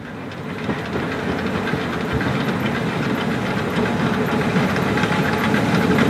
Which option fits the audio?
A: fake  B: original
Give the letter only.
B